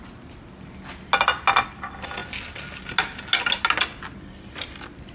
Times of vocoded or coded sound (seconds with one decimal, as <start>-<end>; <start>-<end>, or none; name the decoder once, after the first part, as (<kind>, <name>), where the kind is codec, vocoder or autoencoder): none